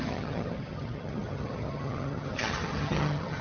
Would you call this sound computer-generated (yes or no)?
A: yes